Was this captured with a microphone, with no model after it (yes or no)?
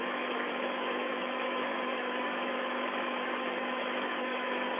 no